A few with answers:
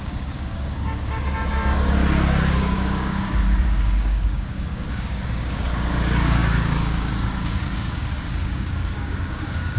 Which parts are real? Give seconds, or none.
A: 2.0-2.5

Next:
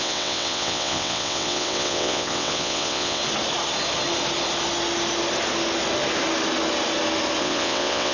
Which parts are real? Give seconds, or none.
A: 3.2-7.4

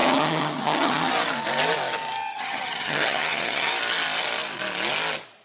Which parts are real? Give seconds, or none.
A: 1.1-2.3; 3.7-5.4

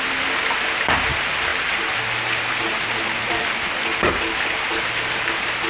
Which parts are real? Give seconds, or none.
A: 0.0-5.7